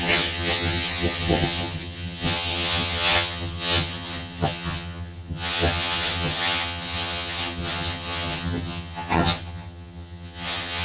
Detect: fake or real fake